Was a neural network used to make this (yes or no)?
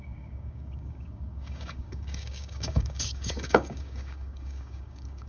yes